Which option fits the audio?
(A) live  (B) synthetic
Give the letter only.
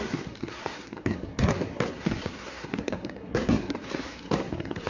B